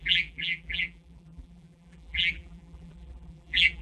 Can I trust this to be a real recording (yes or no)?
no